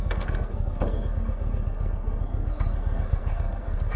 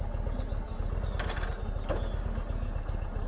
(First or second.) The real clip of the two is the second